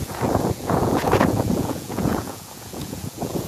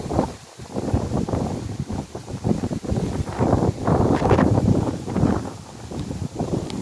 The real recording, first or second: second